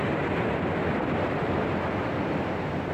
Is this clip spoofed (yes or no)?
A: no